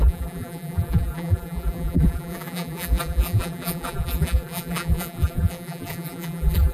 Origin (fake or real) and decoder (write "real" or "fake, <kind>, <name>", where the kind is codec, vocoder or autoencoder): fake, vocoder, BigVGAN v2